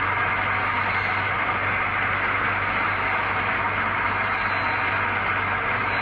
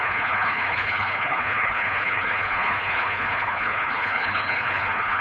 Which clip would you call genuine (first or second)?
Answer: first